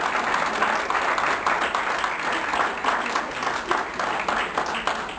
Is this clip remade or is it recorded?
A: recorded